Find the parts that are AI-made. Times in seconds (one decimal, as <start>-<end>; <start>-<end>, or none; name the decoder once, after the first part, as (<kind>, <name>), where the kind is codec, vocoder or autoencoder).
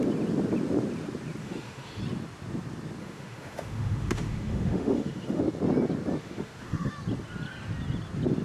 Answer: 1.4-2.0 (autoencoder, DAC-VAE); 3.0-5.4; 6.2-6.9